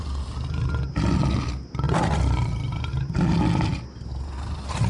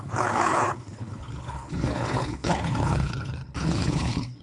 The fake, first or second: second